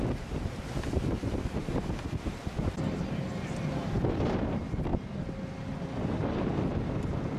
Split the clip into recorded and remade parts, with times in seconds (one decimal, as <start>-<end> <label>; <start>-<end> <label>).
0.0-7.4 recorded